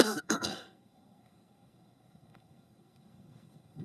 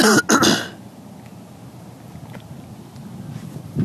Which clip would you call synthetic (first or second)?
first